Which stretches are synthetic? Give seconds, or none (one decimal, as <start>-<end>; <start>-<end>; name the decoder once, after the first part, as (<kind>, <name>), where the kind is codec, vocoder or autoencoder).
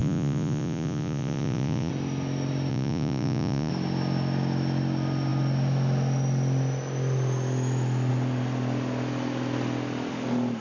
0.0-1.9 (vocoder, Vocos); 2.7-3.7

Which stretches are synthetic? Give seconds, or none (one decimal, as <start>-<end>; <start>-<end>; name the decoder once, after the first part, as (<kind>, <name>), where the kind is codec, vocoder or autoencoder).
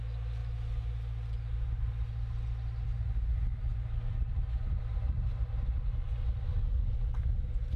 6.5-7.3 (codec, DAC)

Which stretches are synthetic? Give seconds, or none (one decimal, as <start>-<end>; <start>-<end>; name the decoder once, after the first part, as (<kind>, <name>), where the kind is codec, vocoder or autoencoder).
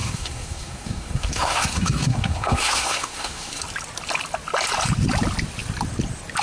0.0-3.6 (codec, SNAC)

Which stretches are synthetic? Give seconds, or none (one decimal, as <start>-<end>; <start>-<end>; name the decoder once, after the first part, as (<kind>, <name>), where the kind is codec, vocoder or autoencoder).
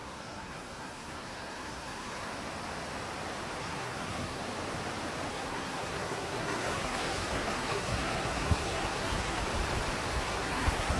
0.0-2.3 (codec, SNAC); 3.6-4.4; 5.3-9.4; 10.1-11.0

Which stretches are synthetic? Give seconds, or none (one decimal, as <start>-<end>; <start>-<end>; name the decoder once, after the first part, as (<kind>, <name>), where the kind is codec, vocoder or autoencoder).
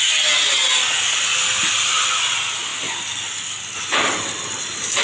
none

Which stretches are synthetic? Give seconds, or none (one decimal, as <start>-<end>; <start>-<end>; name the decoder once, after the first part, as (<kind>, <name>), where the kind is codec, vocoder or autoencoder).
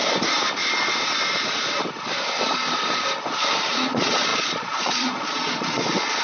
3.7-6.2 (vocoder, Vocos)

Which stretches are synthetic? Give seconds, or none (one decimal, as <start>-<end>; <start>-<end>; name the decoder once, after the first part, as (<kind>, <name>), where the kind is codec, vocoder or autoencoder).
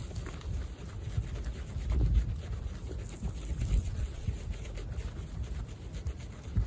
3.8-4.3 (vocoder, WaveNeXt)